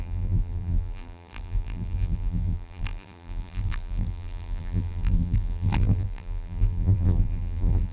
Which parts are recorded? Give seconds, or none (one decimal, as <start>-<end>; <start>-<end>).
none